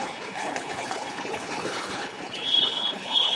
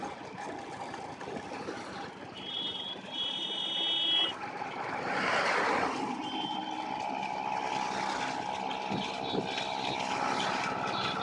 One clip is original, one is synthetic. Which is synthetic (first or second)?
first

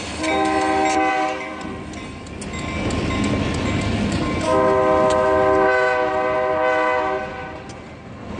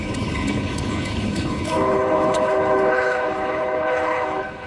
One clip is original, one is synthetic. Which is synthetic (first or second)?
second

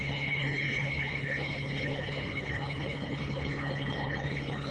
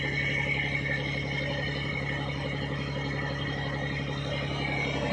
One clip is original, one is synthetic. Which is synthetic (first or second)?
first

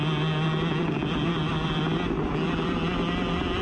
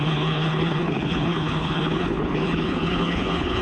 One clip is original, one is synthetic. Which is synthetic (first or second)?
second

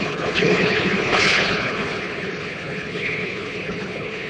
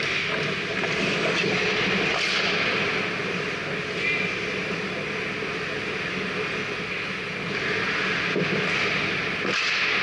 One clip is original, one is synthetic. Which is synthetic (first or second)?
first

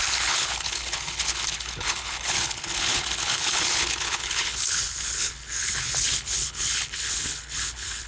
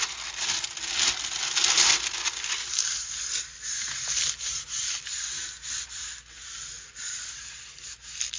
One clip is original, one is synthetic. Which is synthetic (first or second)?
first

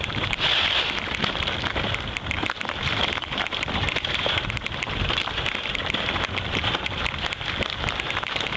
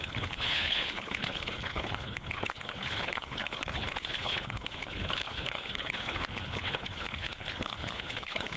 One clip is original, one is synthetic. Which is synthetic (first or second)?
second